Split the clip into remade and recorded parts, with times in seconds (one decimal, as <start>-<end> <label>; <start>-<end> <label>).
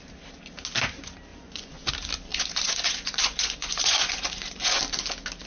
0.0-1.3 recorded; 1.3-1.9 remade; 1.9-2.3 recorded; 2.3-4.8 remade; 4.8-5.5 recorded